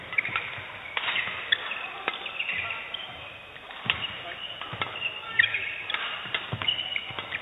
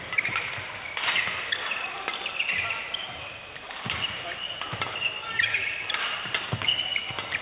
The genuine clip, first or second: first